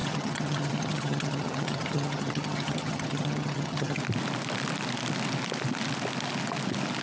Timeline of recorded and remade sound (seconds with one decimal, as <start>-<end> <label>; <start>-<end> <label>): 0.0-4.0 remade; 4.0-7.0 recorded